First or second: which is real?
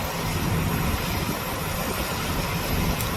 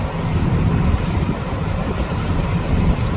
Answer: first